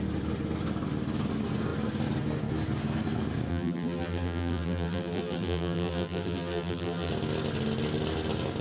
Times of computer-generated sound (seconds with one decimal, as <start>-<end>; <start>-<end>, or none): 3.5-7.1